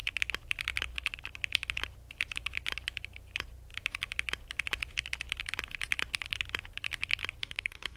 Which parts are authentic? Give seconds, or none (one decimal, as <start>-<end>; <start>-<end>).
0.0-7.4